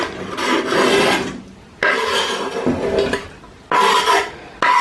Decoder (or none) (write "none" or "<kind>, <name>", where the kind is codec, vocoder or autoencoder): none